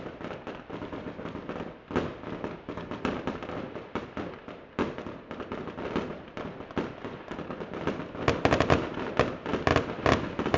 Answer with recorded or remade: recorded